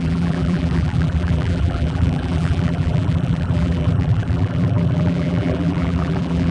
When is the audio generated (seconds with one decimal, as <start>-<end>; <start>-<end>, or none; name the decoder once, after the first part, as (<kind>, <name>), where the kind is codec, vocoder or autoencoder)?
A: 0.0-6.5 (vocoder, BigVGAN v2)